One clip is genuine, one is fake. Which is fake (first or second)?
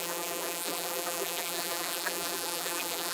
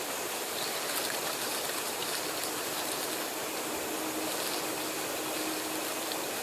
first